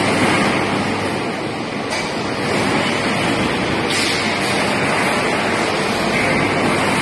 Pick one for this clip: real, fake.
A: real